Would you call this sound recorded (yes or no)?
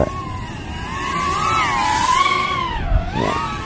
yes